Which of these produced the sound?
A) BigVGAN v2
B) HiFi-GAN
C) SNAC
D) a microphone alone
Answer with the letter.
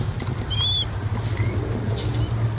D